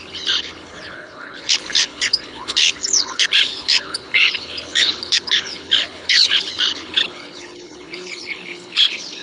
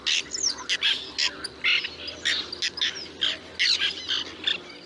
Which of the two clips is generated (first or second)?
first